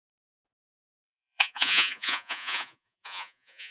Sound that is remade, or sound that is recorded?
remade